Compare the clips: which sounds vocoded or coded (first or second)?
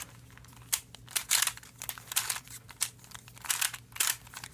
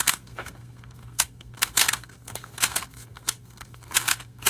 second